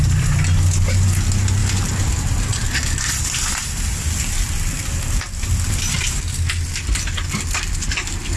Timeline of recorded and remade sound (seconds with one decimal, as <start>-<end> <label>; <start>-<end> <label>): 0.0-8.4 recorded